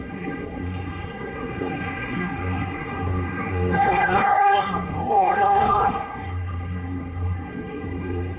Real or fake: fake